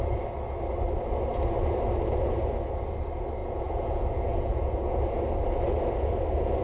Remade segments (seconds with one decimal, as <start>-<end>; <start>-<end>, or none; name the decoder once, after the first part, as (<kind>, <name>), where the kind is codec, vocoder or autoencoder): 3.4-5.0 (vocoder, Vocos)